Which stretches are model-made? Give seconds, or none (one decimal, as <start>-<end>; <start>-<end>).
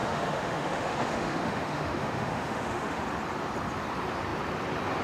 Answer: 0.0-3.0